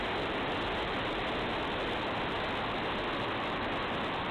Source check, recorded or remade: recorded